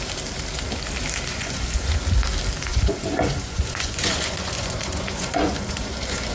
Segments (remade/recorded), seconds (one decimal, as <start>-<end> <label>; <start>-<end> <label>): 0.0-1.3 recorded; 1.3-2.0 remade; 2.0-2.7 recorded; 2.7-6.3 remade

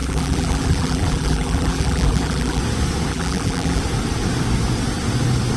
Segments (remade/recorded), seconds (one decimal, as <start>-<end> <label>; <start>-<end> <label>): 0.0-2.6 remade; 2.6-3.1 recorded; 3.1-3.8 remade; 3.8-5.6 recorded